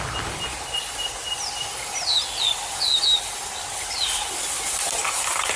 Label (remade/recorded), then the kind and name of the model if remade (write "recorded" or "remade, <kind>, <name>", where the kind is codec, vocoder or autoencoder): recorded